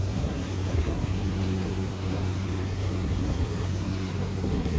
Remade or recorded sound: remade